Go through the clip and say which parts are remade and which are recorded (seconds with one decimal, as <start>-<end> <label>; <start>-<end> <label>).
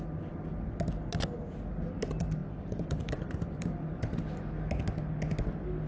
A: 0.0-2.4 recorded; 2.4-4.4 remade; 4.4-5.9 recorded